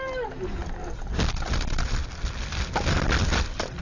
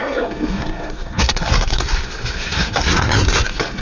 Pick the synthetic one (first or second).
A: second